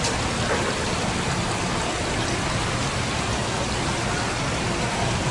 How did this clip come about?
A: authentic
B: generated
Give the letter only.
A